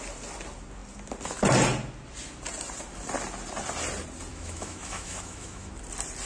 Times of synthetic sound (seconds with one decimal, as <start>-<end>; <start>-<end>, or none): 4.3-5.7